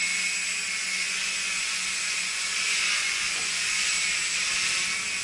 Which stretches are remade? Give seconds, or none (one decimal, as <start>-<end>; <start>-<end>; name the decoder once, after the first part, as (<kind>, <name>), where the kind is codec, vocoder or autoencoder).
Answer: 0.8-3.9 (vocoder, Vocos)